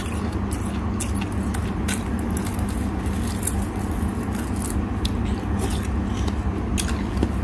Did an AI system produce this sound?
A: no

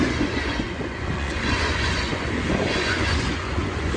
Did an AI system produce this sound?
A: yes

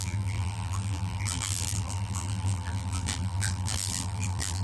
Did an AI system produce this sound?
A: yes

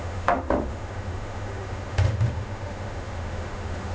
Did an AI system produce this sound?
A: yes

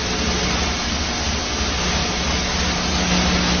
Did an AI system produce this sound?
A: no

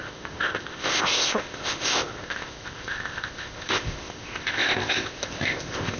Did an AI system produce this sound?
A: yes